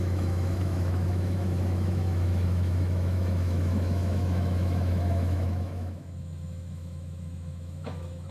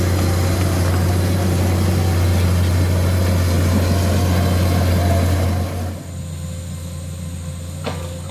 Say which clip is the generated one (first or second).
first